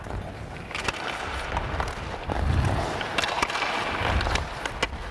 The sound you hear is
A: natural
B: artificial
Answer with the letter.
A